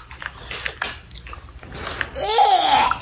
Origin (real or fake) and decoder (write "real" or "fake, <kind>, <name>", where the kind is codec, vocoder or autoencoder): real